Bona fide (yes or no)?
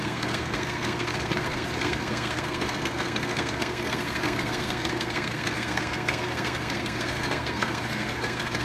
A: no